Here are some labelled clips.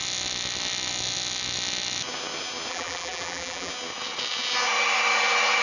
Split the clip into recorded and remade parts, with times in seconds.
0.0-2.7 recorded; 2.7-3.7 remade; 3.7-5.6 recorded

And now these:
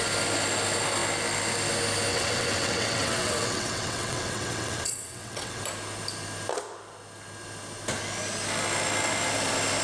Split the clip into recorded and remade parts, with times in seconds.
0.0-2.1 recorded; 2.1-5.6 remade; 5.6-9.8 recorded

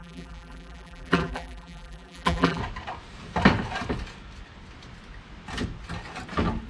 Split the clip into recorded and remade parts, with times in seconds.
0.0-2.6 remade; 2.6-6.7 recorded

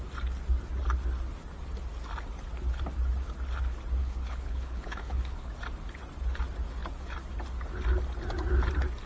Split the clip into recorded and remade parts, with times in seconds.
0.0-4.0 recorded; 4.0-5.5 remade; 5.5-9.1 recorded

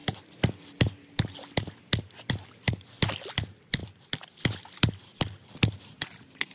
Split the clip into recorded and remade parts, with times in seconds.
0.0-6.5 recorded

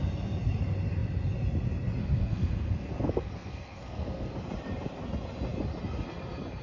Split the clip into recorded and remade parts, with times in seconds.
0.0-2.0 recorded; 2.0-4.3 remade; 4.3-6.6 recorded

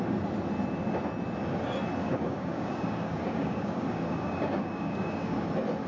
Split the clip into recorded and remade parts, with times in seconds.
0.0-2.0 recorded; 2.0-5.5 remade; 5.5-5.9 recorded

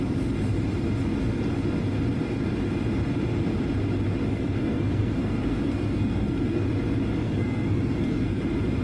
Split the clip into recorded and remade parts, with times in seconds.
0.0-4.3 recorded; 4.3-6.7 remade; 6.7-7.2 recorded; 7.2-8.4 remade; 8.4-8.8 recorded